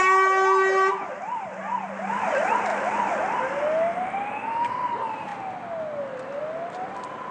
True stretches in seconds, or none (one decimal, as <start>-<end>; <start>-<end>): 0.0-7.3